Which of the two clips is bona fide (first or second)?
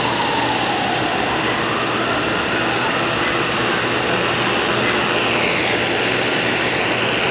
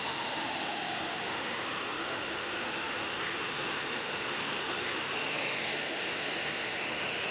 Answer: first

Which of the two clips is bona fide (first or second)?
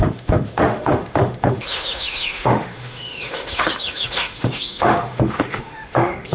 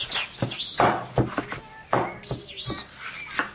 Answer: second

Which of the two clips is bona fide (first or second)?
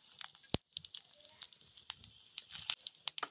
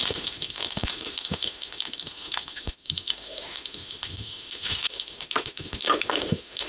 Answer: first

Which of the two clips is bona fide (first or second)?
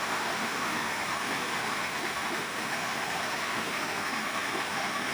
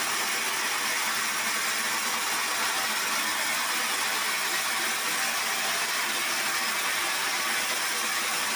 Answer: second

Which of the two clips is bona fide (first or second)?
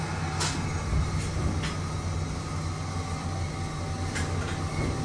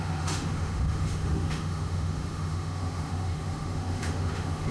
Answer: first